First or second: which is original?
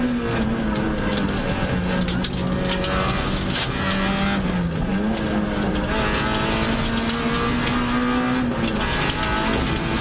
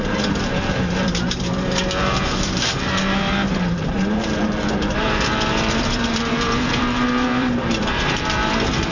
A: first